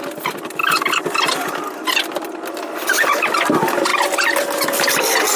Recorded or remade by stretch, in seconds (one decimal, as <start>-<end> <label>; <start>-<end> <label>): 0.0-5.4 recorded